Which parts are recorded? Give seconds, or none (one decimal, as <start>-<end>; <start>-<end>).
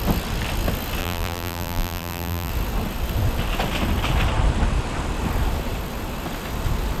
0.0-1.0; 2.5-7.0